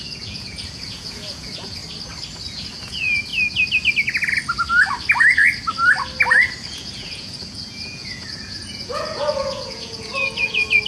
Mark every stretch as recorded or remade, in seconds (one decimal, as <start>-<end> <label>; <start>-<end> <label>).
0.0-1.8 remade; 1.8-2.5 recorded; 2.5-3.3 remade; 3.3-6.7 recorded; 6.7-10.9 remade